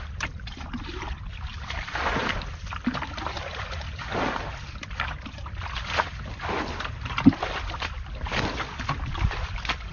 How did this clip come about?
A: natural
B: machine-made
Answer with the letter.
B